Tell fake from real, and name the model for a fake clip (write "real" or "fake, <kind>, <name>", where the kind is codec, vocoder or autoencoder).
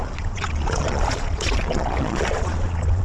fake, vocoder, Vocos